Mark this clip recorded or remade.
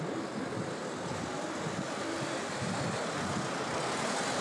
recorded